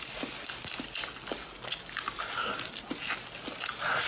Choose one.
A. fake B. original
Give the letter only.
B